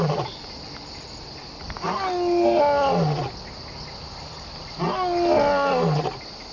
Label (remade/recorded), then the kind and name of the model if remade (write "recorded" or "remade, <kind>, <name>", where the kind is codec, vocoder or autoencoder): recorded